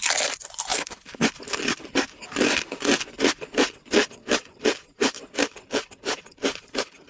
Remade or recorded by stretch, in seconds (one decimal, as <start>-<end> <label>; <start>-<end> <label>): 0.0-0.7 recorded; 0.7-1.4 remade; 1.4-4.0 recorded; 4.0-5.8 remade; 5.8-7.1 recorded